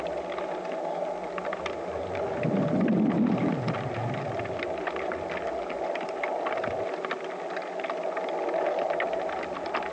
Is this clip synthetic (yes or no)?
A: no